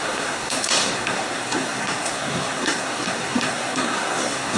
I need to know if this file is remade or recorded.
remade